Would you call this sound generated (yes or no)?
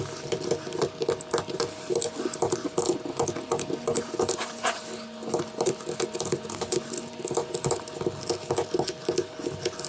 no